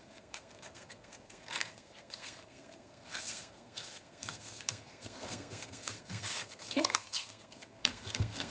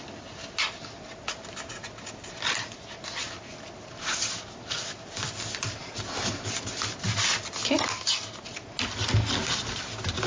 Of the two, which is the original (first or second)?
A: second